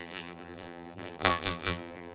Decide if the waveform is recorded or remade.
remade